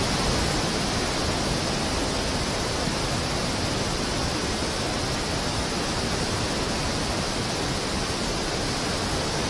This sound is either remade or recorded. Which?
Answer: recorded